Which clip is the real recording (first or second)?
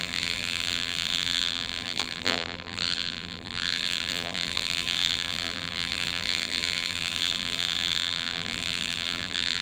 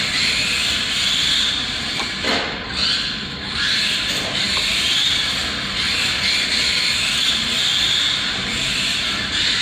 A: second